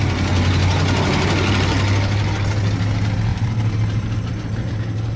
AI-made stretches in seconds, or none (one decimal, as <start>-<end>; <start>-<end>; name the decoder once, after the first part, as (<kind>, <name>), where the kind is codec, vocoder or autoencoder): 3.3-4.3 (vocoder, BigVGAN v2)